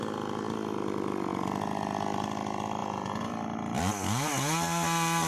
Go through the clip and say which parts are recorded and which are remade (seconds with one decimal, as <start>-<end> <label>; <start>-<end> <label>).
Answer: 0.0-2.8 recorded; 2.8-3.3 remade; 3.3-5.3 recorded